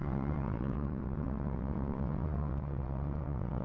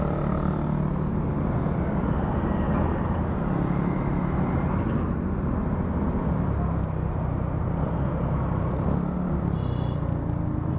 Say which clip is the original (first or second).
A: second